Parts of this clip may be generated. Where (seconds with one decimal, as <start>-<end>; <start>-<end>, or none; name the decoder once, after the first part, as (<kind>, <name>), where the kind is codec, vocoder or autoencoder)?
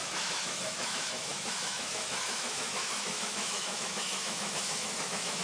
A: 0.0-5.4 (autoencoder, DAC-VAE)